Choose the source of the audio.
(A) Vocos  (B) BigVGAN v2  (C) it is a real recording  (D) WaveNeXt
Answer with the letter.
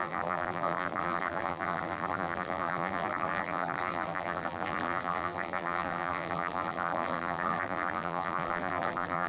B